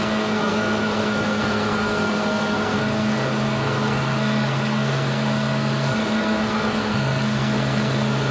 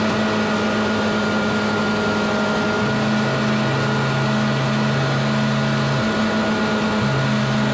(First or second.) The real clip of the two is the second